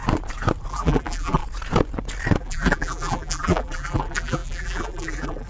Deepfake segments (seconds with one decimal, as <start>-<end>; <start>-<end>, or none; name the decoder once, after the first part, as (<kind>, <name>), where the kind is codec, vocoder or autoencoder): 0.7-1.4 (vocoder, BigVGAN v2); 2.4-5.5